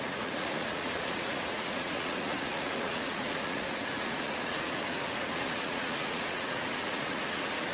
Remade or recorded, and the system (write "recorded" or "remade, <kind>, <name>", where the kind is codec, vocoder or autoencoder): remade, vocoder, Vocos